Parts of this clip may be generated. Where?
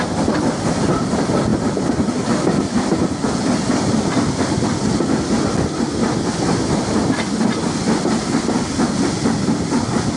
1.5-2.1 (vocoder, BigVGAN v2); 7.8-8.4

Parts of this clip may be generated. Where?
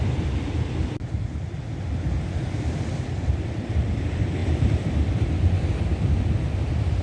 3.2-4.0 (vocoder, BigVGAN v2); 4.4-6.1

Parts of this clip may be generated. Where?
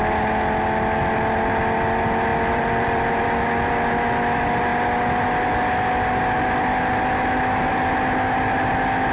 2.3-3.7 (vocoder, BigVGAN v2)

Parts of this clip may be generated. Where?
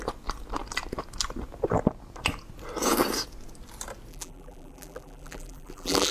4.1-6.1 (vocoder, BigVGAN v2)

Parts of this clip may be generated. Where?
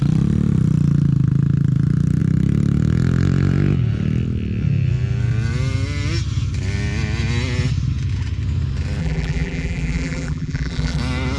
9.0-11.0 (vocoder, BigVGAN v2)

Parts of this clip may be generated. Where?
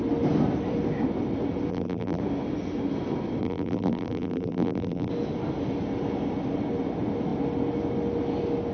1.7-2.2 (vocoder, BigVGAN v2); 3.4-5.1